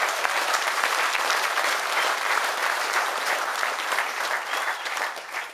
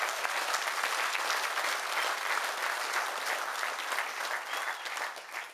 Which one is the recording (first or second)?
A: second